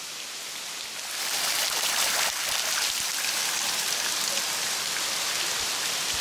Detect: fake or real fake